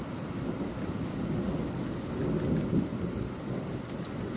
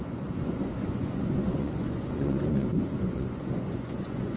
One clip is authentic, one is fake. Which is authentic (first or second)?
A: first